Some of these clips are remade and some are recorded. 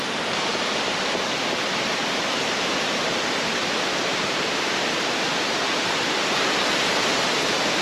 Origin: remade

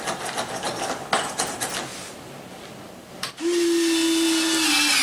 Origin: recorded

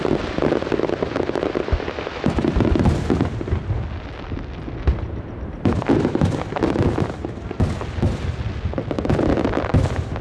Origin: recorded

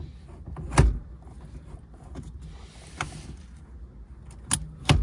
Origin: recorded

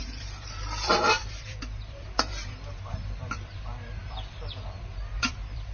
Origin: remade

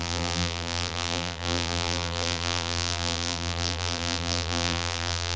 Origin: remade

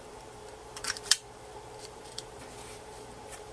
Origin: remade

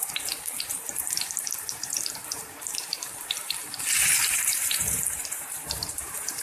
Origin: remade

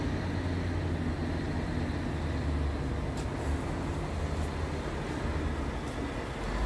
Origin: recorded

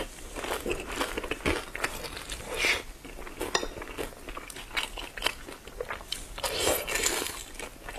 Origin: recorded